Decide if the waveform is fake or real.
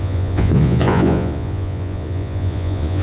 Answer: fake